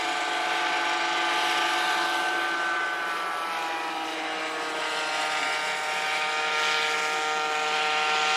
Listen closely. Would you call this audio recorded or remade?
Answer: recorded